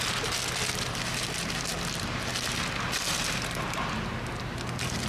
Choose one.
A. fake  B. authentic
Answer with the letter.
B